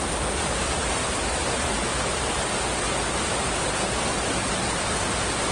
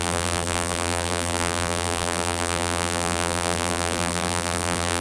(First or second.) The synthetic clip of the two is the second